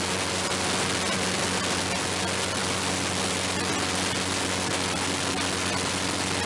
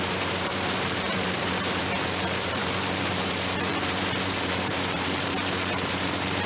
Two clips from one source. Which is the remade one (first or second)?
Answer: second